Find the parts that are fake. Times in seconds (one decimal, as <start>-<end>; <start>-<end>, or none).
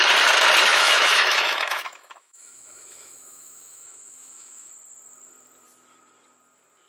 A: 0.7-4.7